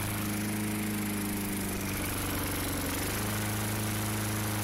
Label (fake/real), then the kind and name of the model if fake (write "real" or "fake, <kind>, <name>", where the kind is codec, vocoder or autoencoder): real